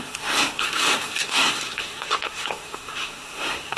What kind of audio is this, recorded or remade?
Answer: remade